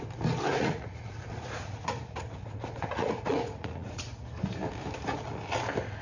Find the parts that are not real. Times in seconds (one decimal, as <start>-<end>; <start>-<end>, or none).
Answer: 0.5-4.1